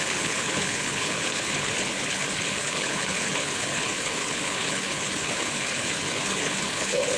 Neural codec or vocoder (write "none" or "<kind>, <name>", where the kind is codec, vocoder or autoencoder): codec, HILCodec